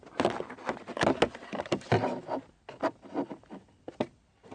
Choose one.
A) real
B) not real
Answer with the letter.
A